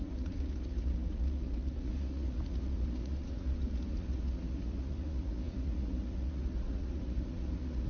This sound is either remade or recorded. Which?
remade